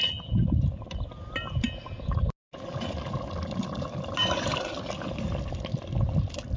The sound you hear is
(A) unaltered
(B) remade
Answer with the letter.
A